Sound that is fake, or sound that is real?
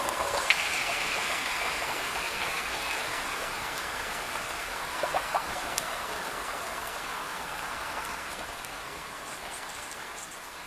fake